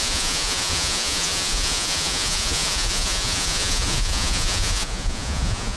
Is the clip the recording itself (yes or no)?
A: no